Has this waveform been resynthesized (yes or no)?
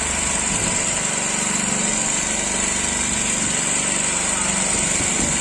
no